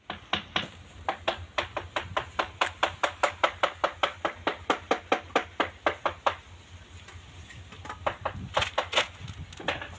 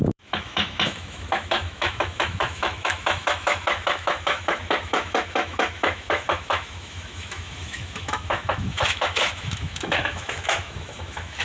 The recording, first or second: first